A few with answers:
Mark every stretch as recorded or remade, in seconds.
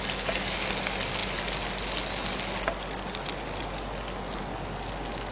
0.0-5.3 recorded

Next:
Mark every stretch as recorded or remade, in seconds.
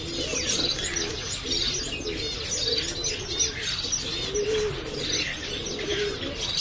0.0-6.6 recorded